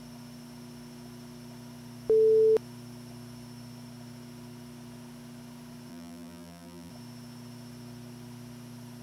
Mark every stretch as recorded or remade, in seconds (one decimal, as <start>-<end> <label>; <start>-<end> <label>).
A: 0.0-5.9 recorded; 5.9-6.9 remade; 6.9-9.0 recorded